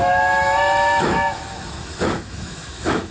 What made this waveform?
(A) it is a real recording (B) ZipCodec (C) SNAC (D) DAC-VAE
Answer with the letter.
D